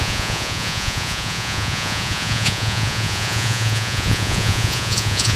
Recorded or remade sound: remade